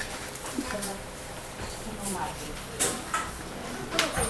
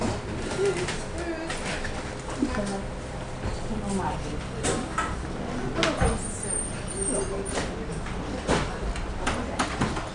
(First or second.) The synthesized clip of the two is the first